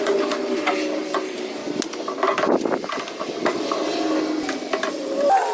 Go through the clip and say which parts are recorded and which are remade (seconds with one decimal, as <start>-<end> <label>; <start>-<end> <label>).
0.0-1.6 remade; 1.6-4.9 recorded; 4.9-5.5 remade